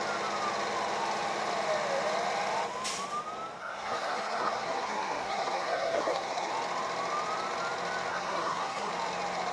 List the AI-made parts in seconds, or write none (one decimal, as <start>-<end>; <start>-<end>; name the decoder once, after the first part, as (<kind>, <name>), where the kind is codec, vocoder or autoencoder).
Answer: 3.6-6.5 (codec, SNAC); 8.1-8.9